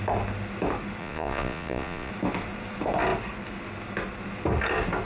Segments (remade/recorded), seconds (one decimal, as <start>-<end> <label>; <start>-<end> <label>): 0.0-1.0 recorded; 1.0-2.1 remade; 2.1-5.0 recorded